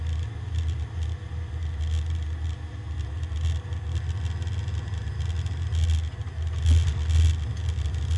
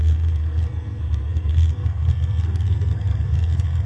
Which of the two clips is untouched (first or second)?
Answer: first